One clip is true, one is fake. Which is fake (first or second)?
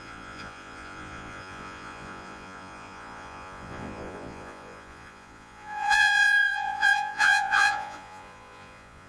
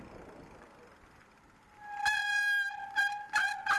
first